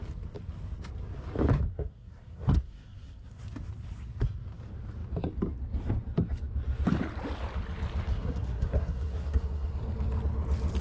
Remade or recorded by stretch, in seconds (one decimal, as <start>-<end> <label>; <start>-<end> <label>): 0.0-1.7 recorded; 1.7-3.4 remade; 3.4-8.1 recorded; 8.1-9.7 remade; 9.7-10.8 recorded